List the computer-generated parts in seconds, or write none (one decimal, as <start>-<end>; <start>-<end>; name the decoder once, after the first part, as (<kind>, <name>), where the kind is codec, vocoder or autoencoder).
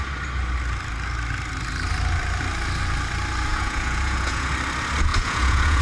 3.5-4.5 (vocoder, Vocos); 5.1-5.8